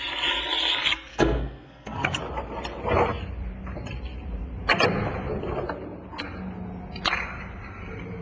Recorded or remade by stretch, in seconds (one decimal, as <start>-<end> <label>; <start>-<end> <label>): 0.0-1.1 recorded; 1.1-2.2 remade; 2.2-8.2 recorded